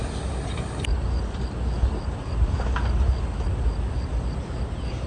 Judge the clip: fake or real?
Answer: real